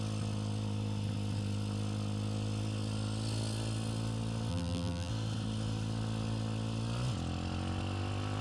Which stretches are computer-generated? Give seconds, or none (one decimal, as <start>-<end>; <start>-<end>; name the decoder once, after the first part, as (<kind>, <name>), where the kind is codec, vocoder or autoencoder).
4.5-5.1 (vocoder, BigVGAN v2)